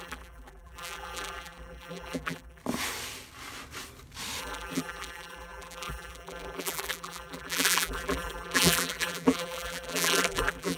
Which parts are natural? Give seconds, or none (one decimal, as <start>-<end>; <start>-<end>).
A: 2.6-4.4